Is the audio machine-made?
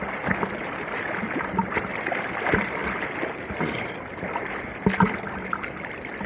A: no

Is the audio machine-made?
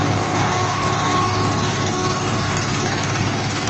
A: yes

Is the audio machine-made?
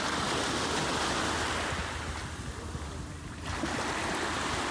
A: no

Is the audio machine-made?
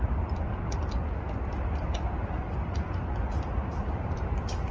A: no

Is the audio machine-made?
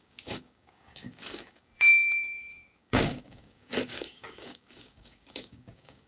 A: yes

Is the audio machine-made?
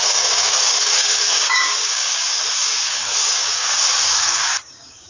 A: yes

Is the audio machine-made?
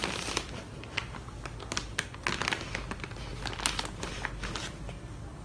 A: no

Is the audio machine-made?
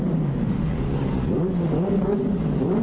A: yes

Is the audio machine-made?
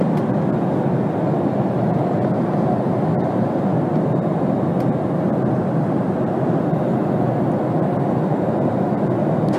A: no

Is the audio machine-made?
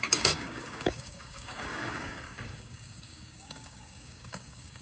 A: yes